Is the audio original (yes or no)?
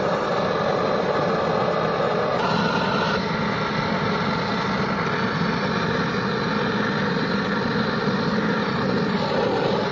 yes